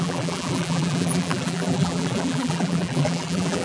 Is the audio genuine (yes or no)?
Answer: no